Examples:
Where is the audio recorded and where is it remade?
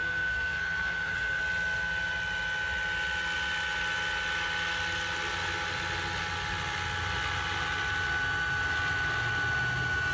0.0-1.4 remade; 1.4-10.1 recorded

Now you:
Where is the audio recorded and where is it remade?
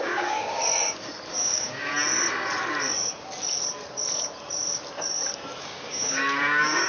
0.0-0.6 remade; 0.6-1.3 recorded; 1.3-1.9 remade; 1.9-5.6 recorded; 5.6-6.9 remade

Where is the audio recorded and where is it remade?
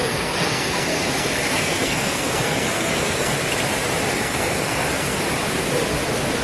0.0-3.4 remade; 3.4-4.1 recorded; 4.1-5.2 remade; 5.2-6.4 recorded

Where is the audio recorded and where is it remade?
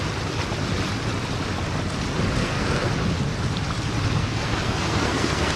0.0-2.4 recorded; 2.4-2.9 remade; 2.9-4.2 recorded; 4.2-5.6 remade